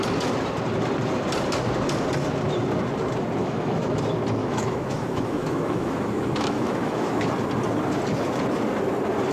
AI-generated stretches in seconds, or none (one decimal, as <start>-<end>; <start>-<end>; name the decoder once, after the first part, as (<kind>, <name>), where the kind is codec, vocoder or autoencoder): 3.4-4.0 (autoencoder, DAC-VAE); 4.4-7.3